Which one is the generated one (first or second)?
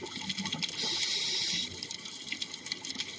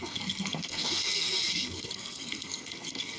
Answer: second